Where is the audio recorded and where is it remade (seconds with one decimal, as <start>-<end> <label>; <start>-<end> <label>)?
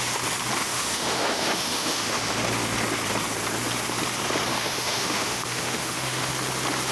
0.0-0.6 recorded; 0.6-2.2 remade; 2.2-4.5 recorded; 4.5-6.3 remade; 6.3-6.9 recorded